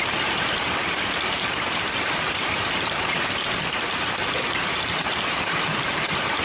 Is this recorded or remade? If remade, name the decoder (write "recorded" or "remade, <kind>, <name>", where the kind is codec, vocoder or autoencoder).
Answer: remade, vocoder, BigVGAN v2